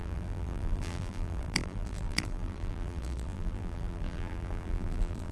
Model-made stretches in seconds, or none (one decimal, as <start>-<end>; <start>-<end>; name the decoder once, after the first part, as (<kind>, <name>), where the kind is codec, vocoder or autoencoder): 0.0-5.3 (vocoder, BigVGAN v2)